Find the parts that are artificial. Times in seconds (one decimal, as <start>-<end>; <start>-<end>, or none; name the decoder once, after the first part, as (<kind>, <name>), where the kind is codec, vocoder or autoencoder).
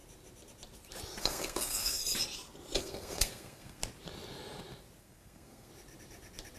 1.2-2.0 (codec, SNAC); 2.8-3.8; 5.0-5.7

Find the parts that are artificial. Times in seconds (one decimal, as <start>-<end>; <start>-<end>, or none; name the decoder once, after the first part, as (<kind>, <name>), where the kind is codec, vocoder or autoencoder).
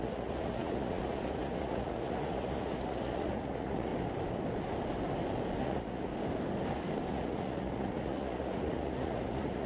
0.0-3.9 (vocoder, Vocos); 5.6-6.1; 7.1-9.7